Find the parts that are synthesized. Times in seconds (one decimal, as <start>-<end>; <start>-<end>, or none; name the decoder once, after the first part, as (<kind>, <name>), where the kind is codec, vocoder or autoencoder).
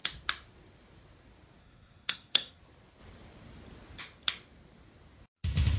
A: 1.6-2.6 (codec, SNAC)